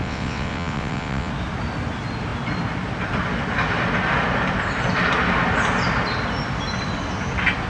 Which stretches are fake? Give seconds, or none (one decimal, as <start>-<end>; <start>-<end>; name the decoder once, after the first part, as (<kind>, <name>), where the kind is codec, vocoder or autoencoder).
0.0-1.3 (vocoder, WaveNeXt)